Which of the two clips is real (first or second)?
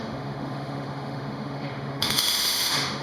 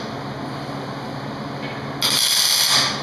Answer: second